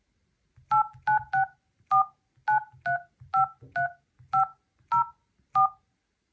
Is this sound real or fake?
real